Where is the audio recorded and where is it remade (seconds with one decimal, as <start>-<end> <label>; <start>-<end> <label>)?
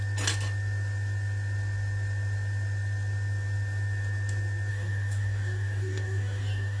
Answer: 0.0-4.7 recorded; 4.7-6.8 remade